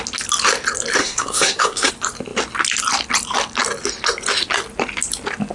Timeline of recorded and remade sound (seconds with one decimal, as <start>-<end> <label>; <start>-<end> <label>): 0.0-1.0 recorded; 1.0-1.9 remade; 1.9-5.5 recorded